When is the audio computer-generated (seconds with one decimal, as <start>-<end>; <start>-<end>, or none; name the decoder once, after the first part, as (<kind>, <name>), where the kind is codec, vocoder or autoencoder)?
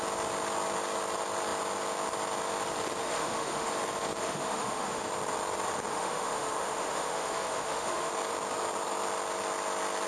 3.0-3.7 (autoencoder, DAC-VAE); 4.2-5.0; 5.9-8.1